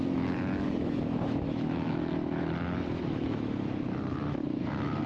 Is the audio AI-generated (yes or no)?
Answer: yes